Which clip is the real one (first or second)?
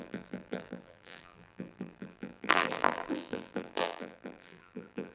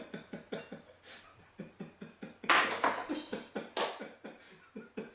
second